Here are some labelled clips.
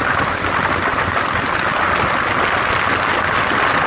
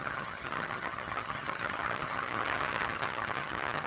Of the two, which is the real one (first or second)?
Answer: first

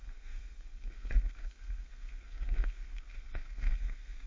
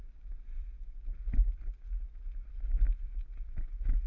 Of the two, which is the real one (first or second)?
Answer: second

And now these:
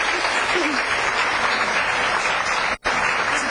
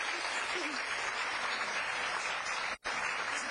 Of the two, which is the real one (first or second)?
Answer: first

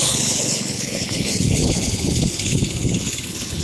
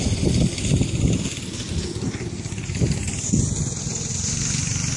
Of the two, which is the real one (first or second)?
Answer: second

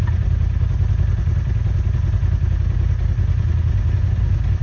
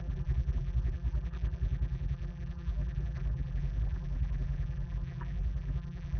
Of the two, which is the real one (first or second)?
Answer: first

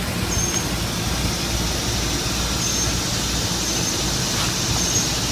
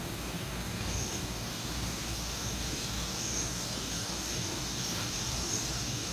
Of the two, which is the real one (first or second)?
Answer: first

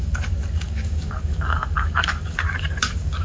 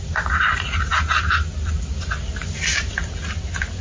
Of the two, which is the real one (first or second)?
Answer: second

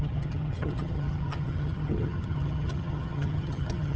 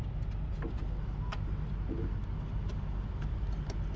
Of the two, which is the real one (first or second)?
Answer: second